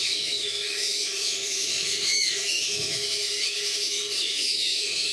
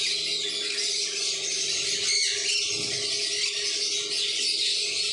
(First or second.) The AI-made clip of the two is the first